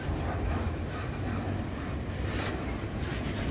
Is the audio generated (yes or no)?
no